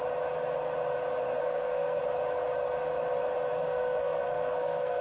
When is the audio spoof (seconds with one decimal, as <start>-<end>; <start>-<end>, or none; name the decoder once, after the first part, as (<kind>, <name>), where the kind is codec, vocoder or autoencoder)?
1.4-2.0 (codec, SNAC); 3.5-5.0